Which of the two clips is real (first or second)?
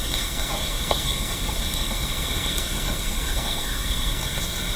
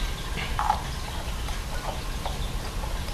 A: second